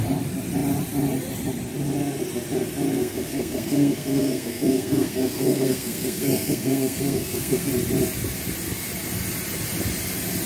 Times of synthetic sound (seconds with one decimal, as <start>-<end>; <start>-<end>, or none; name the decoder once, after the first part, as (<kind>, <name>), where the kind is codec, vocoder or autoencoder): 2.9-7.7 (codec, SNAC)